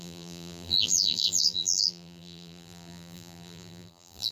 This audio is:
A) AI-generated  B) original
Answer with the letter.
A